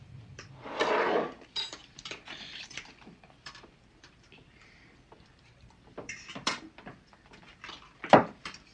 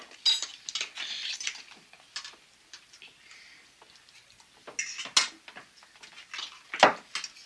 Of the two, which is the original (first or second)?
second